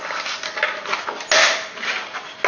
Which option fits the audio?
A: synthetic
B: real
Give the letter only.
B